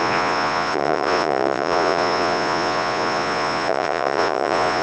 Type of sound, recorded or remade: remade